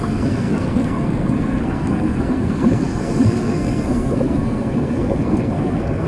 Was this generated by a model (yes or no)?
yes